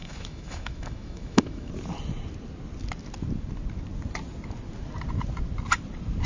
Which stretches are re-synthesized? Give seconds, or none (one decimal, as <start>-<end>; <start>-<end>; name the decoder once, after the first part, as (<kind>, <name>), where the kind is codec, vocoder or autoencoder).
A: 0.0-1.7 (autoencoder, DAC-VAE)